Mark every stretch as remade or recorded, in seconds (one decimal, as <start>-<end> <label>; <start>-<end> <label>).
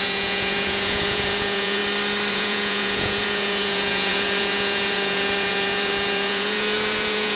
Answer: 0.0-1.8 remade; 1.8-2.3 recorded; 2.3-7.4 remade